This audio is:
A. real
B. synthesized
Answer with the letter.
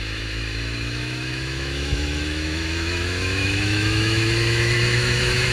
B